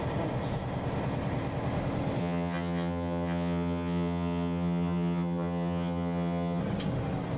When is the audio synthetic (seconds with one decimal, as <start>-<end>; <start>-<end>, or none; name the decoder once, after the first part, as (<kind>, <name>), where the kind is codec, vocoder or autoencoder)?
2.2-6.6 (vocoder, HiFi-GAN)

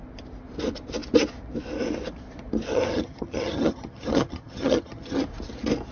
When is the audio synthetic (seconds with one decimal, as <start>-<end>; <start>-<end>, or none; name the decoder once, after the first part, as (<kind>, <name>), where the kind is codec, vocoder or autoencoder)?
2.7-5.2 (vocoder, HiFi-GAN)

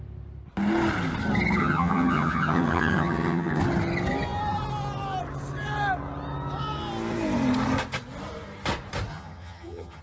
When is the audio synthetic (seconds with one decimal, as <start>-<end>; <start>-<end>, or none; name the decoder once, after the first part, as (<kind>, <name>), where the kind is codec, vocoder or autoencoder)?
1.6-3.6 (vocoder, HiFi-GAN); 9.1-10.0

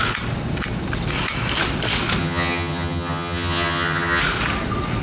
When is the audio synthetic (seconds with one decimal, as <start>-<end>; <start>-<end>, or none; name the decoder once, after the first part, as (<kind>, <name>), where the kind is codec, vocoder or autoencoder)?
2.2-4.2 (vocoder, HiFi-GAN)